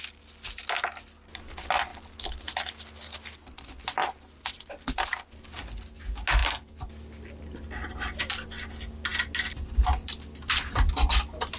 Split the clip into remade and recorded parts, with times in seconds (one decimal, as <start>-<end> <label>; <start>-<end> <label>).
0.0-11.6 recorded